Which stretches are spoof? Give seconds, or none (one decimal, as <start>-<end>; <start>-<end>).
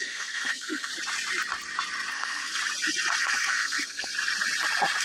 0.0-0.9; 2.1-2.6; 3.2-4.1